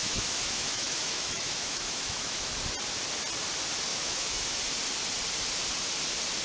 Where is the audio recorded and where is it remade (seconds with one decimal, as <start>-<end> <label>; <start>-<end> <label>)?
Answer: 0.0-2.5 remade; 2.5-3.9 recorded; 3.9-4.6 remade; 4.6-6.4 recorded